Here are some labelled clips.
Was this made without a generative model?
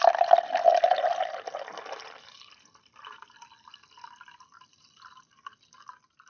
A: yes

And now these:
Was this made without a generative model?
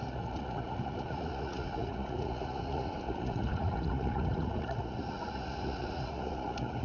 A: no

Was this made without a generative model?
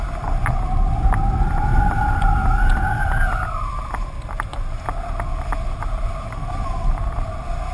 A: yes